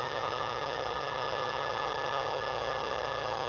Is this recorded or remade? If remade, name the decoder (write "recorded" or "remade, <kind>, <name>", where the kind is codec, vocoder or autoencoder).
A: remade, vocoder, HiFi-GAN